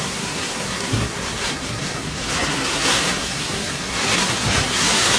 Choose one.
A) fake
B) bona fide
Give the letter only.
A